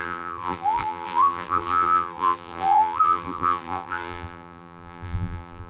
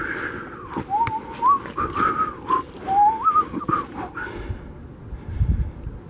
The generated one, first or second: first